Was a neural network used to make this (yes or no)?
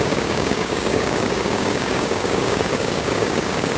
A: yes